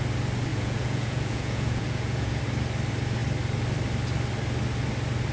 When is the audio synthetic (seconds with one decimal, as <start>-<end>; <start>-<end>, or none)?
0.5-2.4